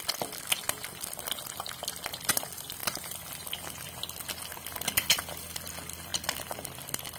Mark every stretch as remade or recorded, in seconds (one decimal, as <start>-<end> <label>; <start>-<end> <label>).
0.0-7.2 recorded